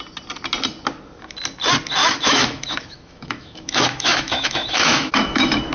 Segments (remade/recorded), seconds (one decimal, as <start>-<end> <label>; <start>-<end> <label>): 0.0-2.0 recorded; 2.0-5.7 remade